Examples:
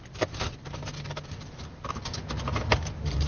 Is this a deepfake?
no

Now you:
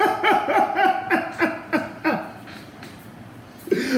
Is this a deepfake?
yes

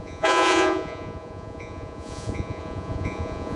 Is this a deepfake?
yes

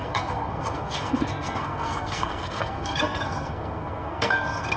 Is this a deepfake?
yes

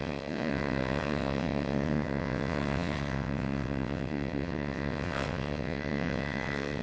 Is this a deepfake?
yes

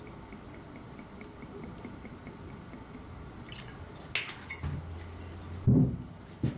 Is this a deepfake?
no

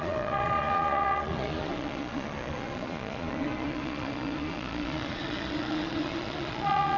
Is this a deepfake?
yes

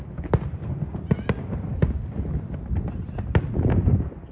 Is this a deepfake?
no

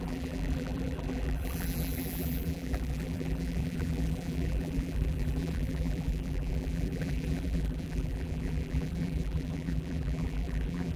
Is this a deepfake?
yes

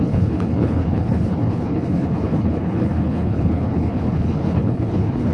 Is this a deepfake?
yes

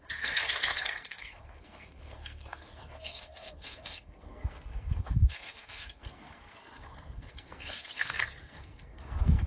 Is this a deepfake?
yes